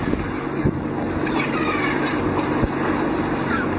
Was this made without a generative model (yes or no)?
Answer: yes